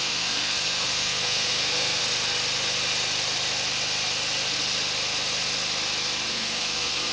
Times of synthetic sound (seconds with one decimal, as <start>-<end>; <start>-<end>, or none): 0.0-2.0; 6.3-7.1